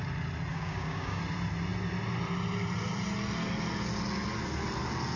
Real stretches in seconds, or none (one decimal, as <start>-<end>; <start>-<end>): 0.0-0.5; 1.2-5.2

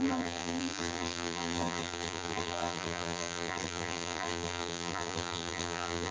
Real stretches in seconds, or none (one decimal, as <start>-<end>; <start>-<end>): none

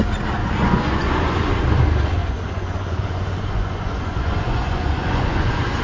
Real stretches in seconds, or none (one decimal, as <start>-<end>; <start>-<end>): 0.0-0.4; 1.6-2.2